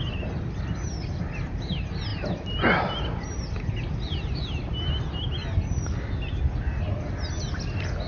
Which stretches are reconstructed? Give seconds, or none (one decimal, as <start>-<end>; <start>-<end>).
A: none